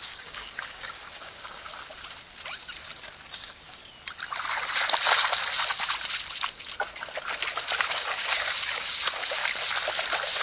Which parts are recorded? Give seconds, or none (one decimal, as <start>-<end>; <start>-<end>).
1.7-3.3; 3.8-7.9; 9.4-10.4